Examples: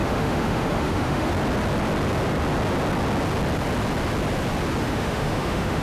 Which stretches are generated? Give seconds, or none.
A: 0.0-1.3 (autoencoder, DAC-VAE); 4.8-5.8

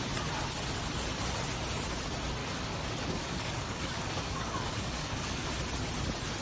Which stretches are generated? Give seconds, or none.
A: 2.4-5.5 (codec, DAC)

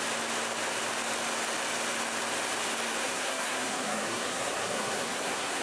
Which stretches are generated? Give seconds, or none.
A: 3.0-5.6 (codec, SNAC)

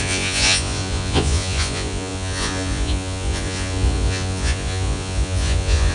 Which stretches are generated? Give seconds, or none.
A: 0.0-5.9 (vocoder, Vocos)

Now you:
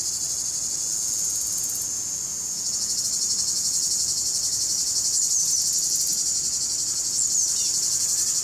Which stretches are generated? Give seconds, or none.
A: 2.3-3.0 (vocoder, Vocos)

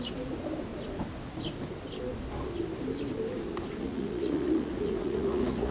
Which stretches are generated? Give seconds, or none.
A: 3.8-5.7 (vocoder, Vocos)